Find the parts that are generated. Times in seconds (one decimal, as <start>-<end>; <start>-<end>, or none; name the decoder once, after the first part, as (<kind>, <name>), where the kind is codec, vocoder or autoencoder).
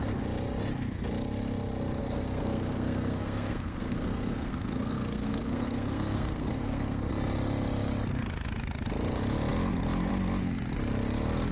2.0-7.1 (codec, SNAC)